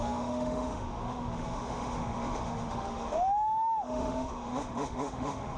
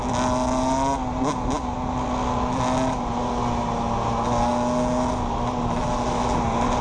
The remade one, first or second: first